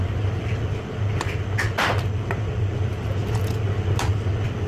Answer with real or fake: real